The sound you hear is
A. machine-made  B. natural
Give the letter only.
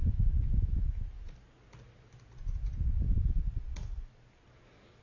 B